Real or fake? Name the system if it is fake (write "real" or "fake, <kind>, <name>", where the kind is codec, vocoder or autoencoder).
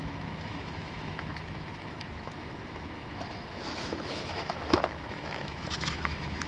fake, autoencoder, DAC-VAE